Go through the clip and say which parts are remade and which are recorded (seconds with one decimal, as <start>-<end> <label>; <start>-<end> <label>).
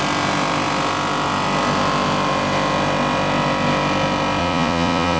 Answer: 0.0-4.4 recorded; 4.4-5.2 remade